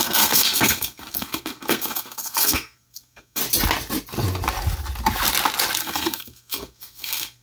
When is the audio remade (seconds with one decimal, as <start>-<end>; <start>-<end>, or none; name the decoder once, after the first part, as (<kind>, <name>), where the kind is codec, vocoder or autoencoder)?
0.0-3.4 (codec, SNAC); 5.8-7.4